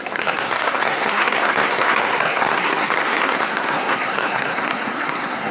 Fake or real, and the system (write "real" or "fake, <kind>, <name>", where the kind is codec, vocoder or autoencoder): fake, codec, SNAC